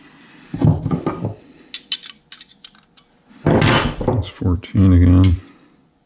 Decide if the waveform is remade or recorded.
recorded